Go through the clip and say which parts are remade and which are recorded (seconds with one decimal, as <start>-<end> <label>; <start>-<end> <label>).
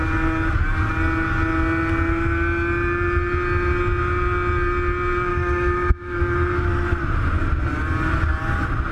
0.0-5.3 recorded; 5.3-6.2 remade; 6.2-8.9 recorded